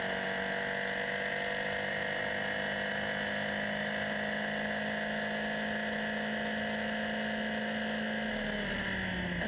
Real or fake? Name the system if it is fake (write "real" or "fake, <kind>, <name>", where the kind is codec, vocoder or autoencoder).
real